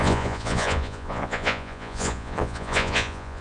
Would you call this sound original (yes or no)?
no